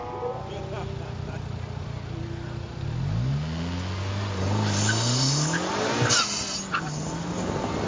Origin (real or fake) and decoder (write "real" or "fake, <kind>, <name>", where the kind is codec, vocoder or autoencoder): real